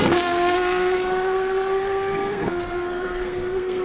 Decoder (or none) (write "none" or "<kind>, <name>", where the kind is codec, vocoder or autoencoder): codec, SNAC